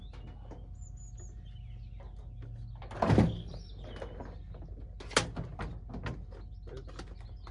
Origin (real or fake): real